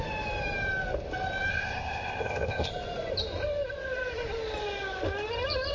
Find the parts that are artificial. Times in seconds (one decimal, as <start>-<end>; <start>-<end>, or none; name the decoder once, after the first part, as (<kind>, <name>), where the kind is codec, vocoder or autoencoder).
1.5-2.7 (codec, ZipCodec)